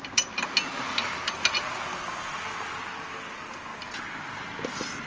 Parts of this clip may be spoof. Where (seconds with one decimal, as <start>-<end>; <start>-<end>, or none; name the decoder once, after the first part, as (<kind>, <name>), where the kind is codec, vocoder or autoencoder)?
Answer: none